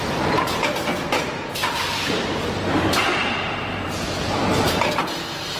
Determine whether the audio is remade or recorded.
remade